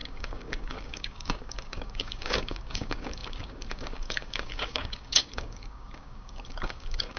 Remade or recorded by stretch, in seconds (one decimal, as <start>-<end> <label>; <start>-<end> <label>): 0.0-7.2 remade